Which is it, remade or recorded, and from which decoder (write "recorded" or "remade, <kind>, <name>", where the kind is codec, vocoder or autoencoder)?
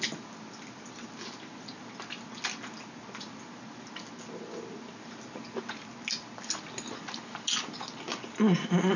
recorded